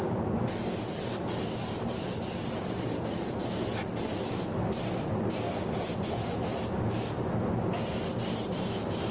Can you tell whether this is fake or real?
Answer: real